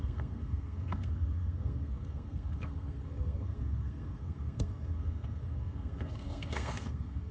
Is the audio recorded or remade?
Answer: remade